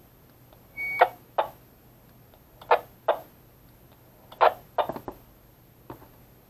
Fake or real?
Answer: real